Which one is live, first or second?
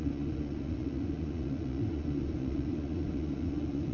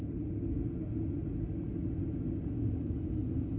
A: second